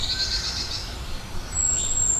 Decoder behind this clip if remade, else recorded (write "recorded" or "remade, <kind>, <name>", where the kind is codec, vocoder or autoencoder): recorded